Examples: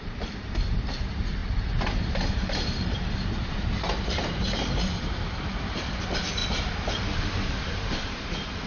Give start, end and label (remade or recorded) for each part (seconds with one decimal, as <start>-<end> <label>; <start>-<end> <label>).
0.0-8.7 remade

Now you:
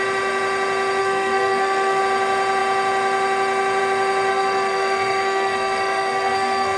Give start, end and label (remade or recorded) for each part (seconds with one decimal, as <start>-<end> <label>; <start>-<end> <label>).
0.0-1.0 recorded; 1.0-2.0 remade; 2.0-4.3 recorded; 4.3-6.8 remade

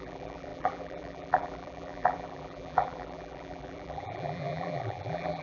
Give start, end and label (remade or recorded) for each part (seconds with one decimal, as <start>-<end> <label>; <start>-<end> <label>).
0.0-5.4 remade

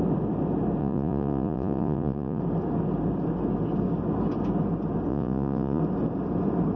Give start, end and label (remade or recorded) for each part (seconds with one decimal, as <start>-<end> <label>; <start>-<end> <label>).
0.0-0.8 recorded; 0.8-2.4 remade; 2.4-5.1 recorded; 5.1-5.8 remade; 5.8-6.8 recorded

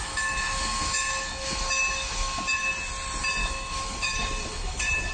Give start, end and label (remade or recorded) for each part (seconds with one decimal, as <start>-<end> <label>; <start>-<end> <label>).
0.0-2.7 remade; 2.7-3.4 recorded; 3.4-5.1 remade